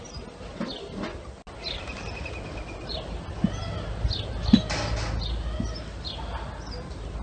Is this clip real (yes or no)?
yes